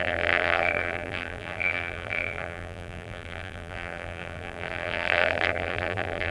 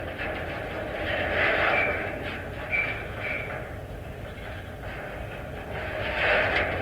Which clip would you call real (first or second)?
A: second